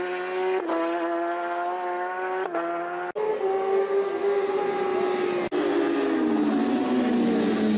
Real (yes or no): yes